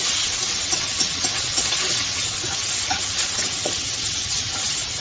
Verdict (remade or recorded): remade